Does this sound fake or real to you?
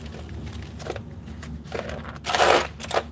real